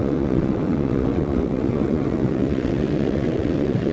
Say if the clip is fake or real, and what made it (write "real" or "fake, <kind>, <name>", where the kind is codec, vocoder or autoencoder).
fake, vocoder, WaveNeXt